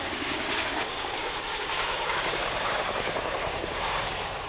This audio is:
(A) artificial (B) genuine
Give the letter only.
A